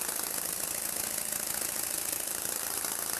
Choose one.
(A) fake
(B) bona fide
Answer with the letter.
A